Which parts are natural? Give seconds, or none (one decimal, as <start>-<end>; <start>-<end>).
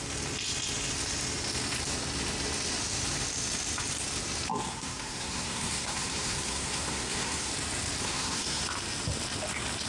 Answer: 0.0-4.7; 7.5-8.0; 8.6-9.9